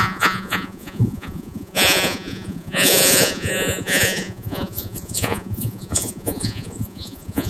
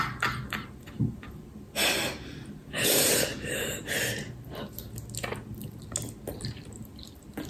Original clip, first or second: second